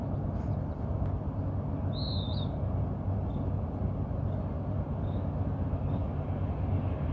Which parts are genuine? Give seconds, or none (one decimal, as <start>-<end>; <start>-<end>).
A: 0.0-7.1